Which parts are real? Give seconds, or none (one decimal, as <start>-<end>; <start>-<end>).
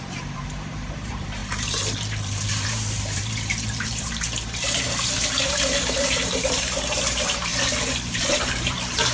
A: 7.5-8.1